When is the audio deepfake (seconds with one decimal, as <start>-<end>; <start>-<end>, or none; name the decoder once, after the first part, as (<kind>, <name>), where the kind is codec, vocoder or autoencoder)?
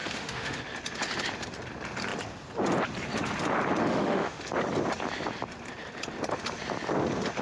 0.0-0.6 (autoencoder, DAC-VAE); 3.8-4.4